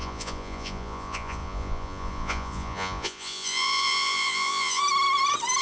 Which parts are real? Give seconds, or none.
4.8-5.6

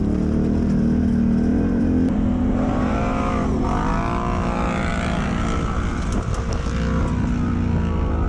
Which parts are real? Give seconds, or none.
0.0-1.5; 3.3-8.3

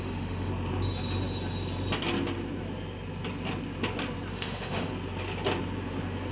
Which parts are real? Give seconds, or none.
0.5-4.3; 4.9-6.3